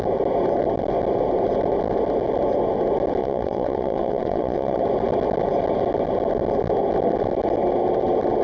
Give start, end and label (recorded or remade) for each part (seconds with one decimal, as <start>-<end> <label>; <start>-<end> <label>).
0.0-3.2 recorded; 3.2-4.8 remade; 4.8-8.4 recorded